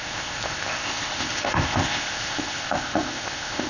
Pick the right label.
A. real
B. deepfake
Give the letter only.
B